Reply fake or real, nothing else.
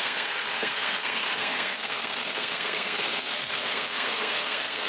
fake